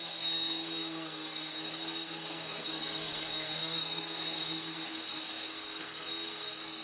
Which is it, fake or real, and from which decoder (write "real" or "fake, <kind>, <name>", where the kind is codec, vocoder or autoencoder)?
fake, codec, SNAC